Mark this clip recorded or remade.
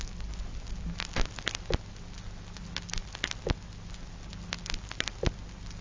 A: recorded